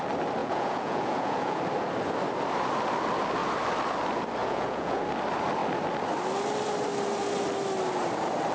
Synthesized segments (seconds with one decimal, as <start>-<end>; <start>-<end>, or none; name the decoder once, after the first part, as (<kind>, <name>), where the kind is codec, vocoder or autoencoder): 0.4-1.6 (vocoder, Vocos); 4.4-5.0